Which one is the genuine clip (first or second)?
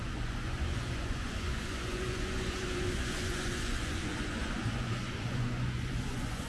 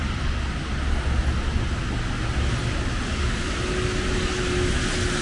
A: second